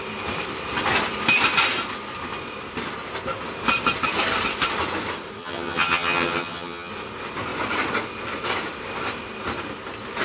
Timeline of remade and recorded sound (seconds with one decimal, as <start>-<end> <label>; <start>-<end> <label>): 0.0-5.4 recorded; 5.4-6.9 remade; 6.9-10.2 recorded